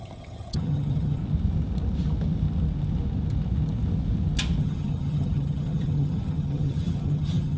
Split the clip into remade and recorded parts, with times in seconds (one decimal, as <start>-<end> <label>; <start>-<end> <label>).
0.0-1.2 remade; 1.2-4.6 recorded; 4.6-7.6 remade